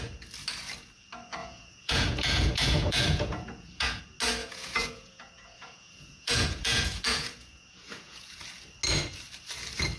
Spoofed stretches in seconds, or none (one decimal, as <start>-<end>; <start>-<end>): 1.4-4.0; 4.4-8.4